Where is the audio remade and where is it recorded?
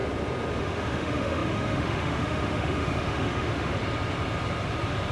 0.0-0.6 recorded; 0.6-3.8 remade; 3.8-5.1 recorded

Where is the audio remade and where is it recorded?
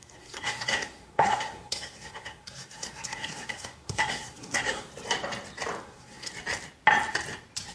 0.0-4.9 remade; 4.9-5.8 recorded; 5.8-6.3 remade; 6.3-7.7 recorded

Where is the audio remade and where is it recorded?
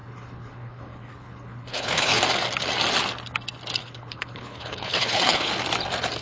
0.0-2.2 remade; 2.2-3.8 recorded; 3.8-5.5 remade; 5.5-6.2 recorded